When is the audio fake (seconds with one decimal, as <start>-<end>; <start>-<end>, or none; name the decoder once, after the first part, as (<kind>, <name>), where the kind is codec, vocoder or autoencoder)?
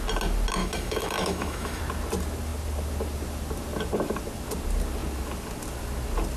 0.6-1.8 (autoencoder, DAC-VAE)